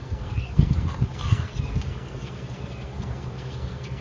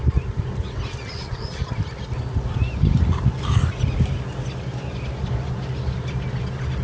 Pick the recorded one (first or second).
second